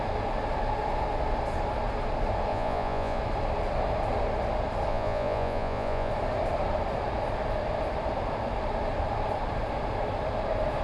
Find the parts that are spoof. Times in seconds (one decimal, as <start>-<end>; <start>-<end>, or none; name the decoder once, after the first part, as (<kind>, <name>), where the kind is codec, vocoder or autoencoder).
2.5-3.2 (vocoder, Vocos); 4.9-6.1